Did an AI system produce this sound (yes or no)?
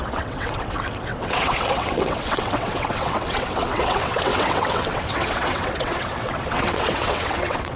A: yes